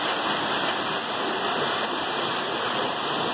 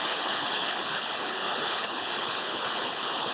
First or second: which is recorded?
first